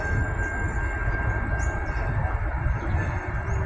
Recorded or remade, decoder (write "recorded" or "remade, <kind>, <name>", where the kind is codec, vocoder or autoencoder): recorded